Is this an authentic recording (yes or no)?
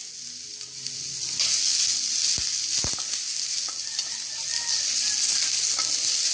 yes